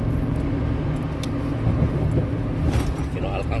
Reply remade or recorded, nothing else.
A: recorded